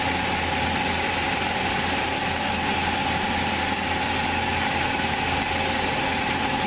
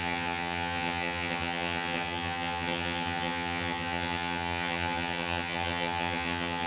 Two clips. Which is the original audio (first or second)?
first